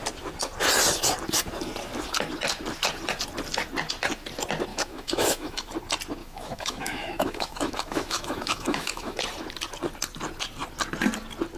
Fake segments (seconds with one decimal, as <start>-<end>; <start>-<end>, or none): 4.7-5.6; 6.2-9.2